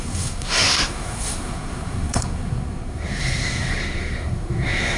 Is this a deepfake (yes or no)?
yes